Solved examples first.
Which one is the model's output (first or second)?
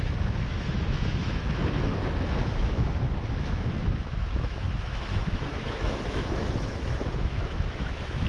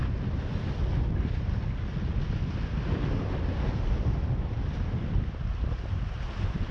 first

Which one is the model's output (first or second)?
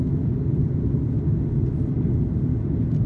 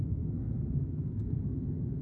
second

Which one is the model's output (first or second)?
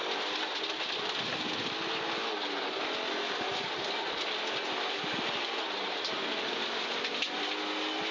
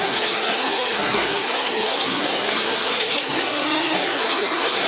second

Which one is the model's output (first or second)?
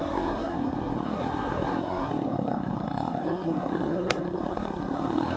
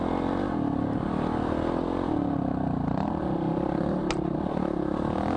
first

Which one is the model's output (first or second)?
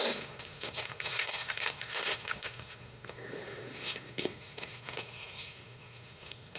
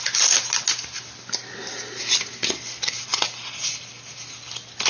first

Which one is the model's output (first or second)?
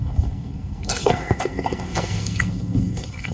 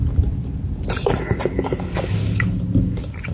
first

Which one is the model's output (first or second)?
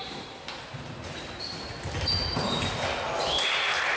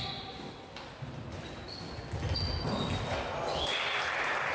first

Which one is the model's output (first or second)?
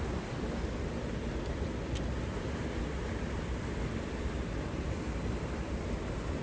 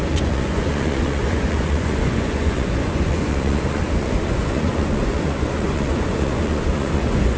second